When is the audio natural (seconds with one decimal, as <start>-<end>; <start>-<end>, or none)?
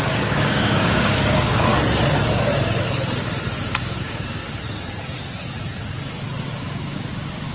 1.7-3.6; 4.4-6.6